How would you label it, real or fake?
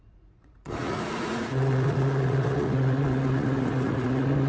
fake